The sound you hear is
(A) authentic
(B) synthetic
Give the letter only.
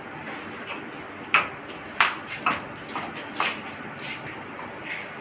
A